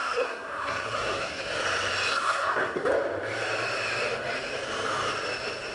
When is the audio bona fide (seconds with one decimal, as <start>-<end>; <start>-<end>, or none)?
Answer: 1.4-2.1; 2.9-5.7